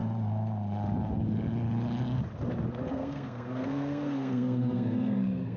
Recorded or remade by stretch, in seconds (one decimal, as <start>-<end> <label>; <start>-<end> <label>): 0.0-2.9 recorded; 2.9-5.6 remade